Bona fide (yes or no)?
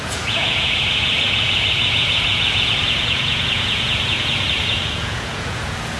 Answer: no